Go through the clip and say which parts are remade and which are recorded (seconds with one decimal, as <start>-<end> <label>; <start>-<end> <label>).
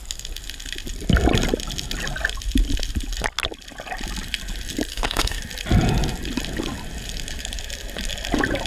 0.0-4.9 recorded; 4.9-5.4 remade; 5.4-8.7 recorded